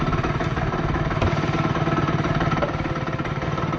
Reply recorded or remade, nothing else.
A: remade